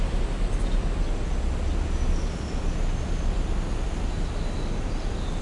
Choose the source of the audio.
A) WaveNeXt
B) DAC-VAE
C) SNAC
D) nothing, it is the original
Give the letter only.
D